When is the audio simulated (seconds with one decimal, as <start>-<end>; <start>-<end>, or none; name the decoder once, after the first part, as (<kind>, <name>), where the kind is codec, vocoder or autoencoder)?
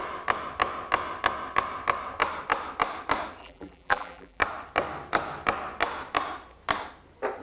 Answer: 3.4-4.4 (vocoder, BigVGAN v2)